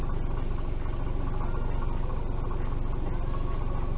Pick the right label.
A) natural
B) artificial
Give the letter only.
A